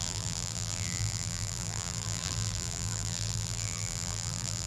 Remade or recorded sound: remade